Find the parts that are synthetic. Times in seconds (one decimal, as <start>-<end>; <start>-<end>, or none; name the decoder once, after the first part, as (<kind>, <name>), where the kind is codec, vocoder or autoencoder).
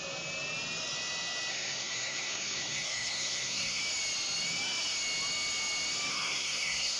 1.5-3.8 (codec, SNAC); 6.1-7.0